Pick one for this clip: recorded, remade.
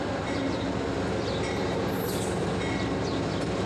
recorded